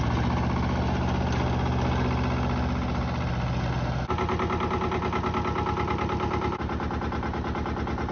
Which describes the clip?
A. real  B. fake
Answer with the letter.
A